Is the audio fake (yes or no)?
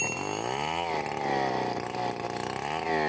no